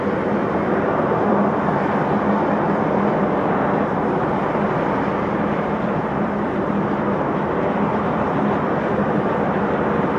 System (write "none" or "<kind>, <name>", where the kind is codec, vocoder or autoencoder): vocoder, BigVGAN v2